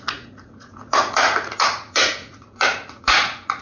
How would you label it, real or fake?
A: fake